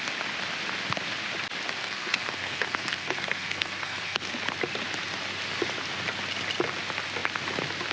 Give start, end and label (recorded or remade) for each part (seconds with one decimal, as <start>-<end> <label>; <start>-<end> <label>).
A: 0.0-1.8 recorded; 1.8-4.3 remade; 4.3-7.9 recorded